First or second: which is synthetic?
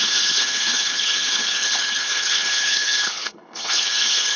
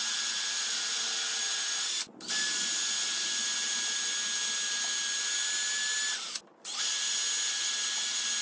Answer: first